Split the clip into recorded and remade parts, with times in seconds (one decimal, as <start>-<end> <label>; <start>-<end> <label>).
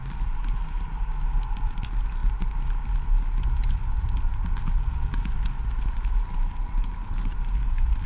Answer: 0.0-8.1 recorded